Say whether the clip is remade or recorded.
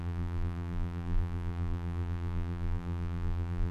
remade